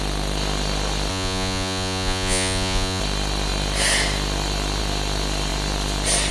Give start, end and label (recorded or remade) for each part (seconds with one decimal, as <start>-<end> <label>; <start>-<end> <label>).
0.0-1.1 recorded; 1.1-3.0 remade; 3.0-6.3 recorded